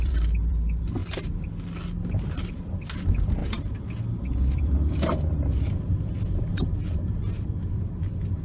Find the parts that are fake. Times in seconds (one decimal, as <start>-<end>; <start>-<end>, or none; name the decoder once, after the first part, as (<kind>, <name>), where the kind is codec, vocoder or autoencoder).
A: 0.0-1.0 (vocoder, BigVGAN v2); 2.5-8.4